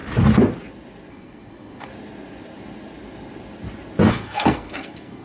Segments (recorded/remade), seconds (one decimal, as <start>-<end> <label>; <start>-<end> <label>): 0.0-1.1 recorded; 1.1-1.9 remade; 1.9-4.1 recorded; 4.1-5.2 remade